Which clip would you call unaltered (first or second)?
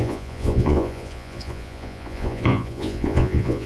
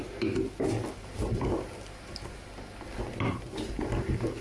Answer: second